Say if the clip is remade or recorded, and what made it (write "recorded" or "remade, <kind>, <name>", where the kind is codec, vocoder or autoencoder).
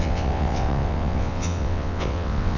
remade, vocoder, WaveNeXt